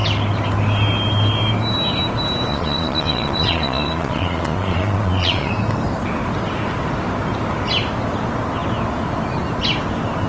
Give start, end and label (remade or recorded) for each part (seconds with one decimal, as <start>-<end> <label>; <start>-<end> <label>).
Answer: 0.0-2.5 recorded; 2.5-5.5 remade; 5.5-10.3 recorded